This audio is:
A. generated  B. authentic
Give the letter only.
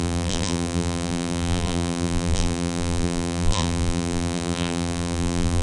A